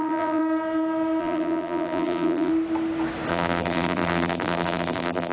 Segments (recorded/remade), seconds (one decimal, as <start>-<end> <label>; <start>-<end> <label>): 0.0-0.4 remade; 0.4-1.2 recorded; 1.2-2.5 remade; 2.5-3.3 recorded; 3.3-5.3 remade